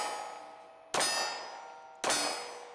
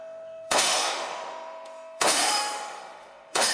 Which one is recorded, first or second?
first